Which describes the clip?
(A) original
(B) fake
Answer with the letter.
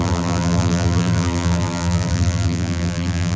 B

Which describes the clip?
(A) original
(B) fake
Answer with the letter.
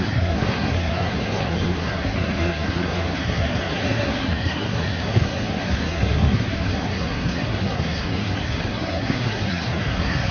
B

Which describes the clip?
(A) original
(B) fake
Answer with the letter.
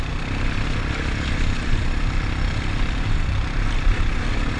A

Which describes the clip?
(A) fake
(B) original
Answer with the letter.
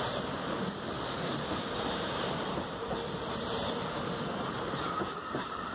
A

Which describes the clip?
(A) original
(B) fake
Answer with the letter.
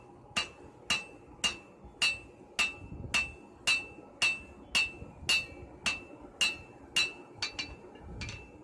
A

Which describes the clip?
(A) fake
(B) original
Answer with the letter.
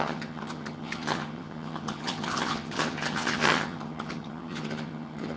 A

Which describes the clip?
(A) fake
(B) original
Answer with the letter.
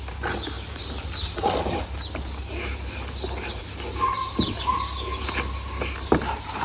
B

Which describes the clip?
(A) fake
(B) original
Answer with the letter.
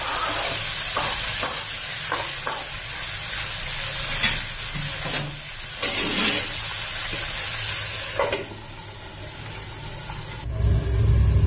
B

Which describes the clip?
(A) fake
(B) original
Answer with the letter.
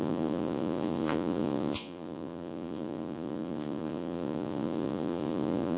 A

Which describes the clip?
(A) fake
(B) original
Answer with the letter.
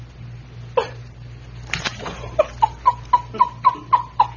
B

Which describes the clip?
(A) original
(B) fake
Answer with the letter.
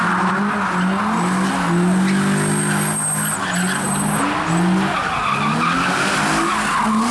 A